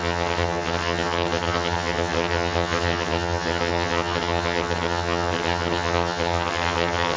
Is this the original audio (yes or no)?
no